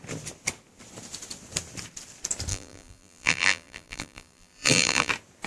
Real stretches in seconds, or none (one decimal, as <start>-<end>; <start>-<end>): 0.0-2.5; 5.1-5.5